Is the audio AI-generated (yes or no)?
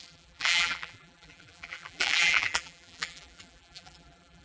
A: yes